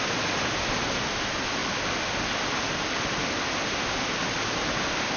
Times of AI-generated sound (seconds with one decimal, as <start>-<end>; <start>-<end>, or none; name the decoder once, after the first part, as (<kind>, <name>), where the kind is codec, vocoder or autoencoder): none